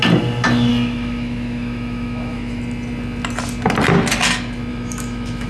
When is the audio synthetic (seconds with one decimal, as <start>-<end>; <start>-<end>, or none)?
0.7-2.6; 4.7-5.5